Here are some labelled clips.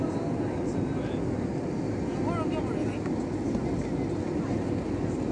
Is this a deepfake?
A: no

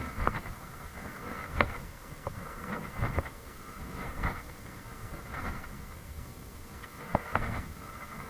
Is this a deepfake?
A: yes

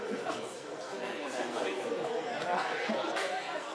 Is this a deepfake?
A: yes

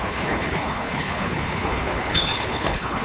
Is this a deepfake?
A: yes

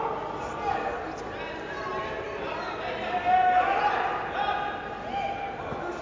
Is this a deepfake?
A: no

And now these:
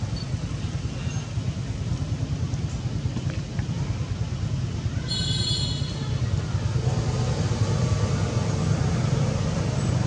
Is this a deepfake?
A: no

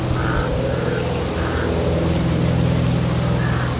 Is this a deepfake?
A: no